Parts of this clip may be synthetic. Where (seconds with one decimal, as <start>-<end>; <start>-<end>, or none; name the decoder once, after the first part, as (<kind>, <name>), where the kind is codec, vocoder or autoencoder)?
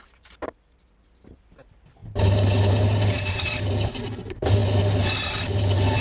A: none